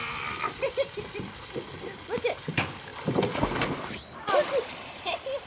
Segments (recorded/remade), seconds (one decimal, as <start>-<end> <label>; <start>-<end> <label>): 0.0-5.5 recorded